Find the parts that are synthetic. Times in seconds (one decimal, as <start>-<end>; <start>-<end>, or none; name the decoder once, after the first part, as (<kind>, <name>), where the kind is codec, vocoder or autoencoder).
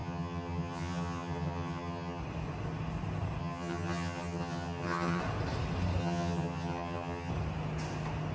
0.0-2.2 (vocoder, HiFi-GAN); 3.4-5.2; 6.0-7.3